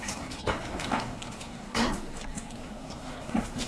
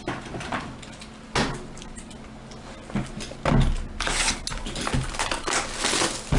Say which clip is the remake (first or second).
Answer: first